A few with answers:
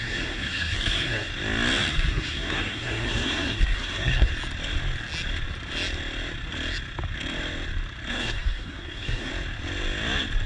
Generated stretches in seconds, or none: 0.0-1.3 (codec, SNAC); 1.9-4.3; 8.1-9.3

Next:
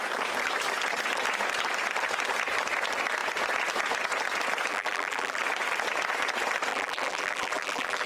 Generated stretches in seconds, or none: 4.7-5.4 (vocoder, BigVGAN v2); 6.7-8.1

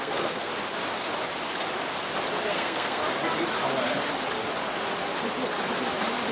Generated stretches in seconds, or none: 0.0-0.5 (codec, SNAC); 2.5-3.0

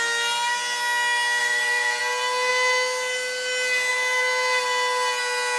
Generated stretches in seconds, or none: 1.4-2.0 (vocoder, BigVGAN v2)

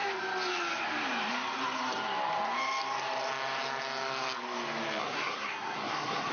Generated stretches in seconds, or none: 5.0-6.3 (codec, SNAC)

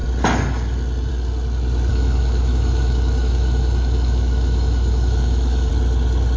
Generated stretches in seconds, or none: 1.9-5.7 (autoencoder, DAC-VAE)

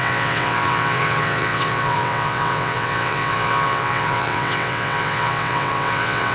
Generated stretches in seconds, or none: 0.0-6.3 (vocoder, WaveNeXt)